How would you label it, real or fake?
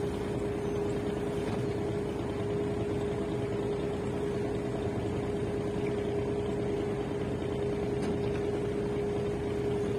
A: real